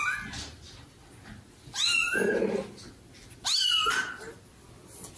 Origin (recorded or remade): recorded